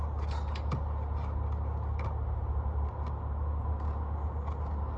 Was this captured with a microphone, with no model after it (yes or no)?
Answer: yes